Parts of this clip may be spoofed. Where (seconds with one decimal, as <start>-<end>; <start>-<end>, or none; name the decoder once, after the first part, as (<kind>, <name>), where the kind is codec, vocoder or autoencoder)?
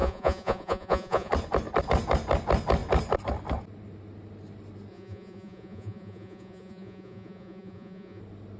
0.0-1.3 (vocoder, Vocos); 4.9-8.2